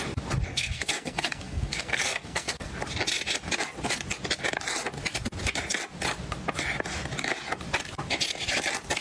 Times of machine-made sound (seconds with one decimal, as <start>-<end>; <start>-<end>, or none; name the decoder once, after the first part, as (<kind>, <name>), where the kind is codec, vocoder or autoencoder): 0.5-2.7 (codec, SNAC)